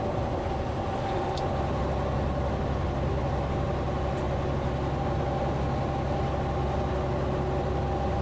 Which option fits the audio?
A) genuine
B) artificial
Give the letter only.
A